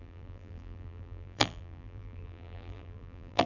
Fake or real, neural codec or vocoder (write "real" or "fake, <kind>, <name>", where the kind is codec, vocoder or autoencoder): fake, vocoder, BigVGAN v2